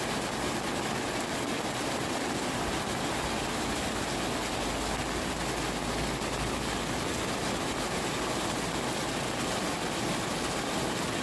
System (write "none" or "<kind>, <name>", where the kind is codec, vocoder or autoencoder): none